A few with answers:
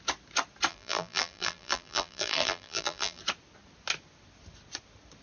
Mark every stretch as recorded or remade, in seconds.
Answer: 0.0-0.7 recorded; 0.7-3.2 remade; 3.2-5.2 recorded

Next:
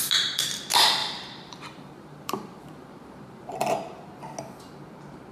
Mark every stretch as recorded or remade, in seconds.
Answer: 0.0-1.0 recorded; 1.0-4.2 remade; 4.2-5.3 recorded

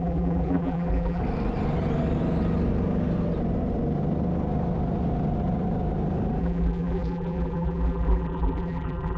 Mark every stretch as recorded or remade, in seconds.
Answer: 0.0-1.2 remade; 1.2-6.4 recorded; 6.4-9.2 remade

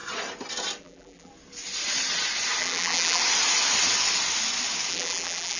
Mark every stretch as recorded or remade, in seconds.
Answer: 0.0-0.8 recorded; 0.8-1.3 remade; 1.3-2.6 recorded; 2.6-3.2 remade; 3.2-4.9 recorded; 4.9-5.6 remade